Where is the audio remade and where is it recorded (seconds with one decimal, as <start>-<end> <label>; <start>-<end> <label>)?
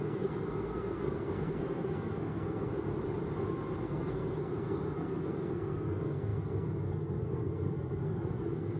0.0-2.9 remade; 2.9-3.8 recorded; 3.8-8.8 remade